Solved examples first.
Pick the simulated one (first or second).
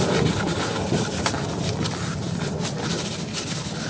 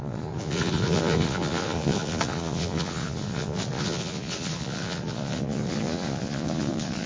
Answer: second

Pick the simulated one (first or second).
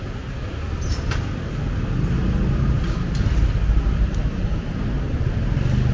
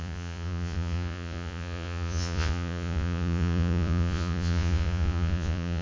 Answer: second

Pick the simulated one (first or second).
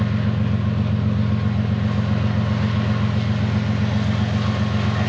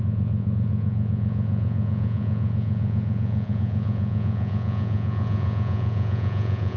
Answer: second